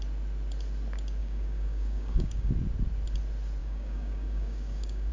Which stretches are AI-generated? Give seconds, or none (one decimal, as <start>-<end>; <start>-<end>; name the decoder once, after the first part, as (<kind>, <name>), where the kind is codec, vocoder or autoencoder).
1.2-2.5 (codec, DAC); 3.6-5.1